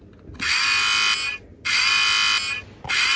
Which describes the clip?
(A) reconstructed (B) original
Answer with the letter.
B